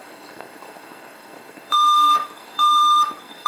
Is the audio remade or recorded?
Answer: remade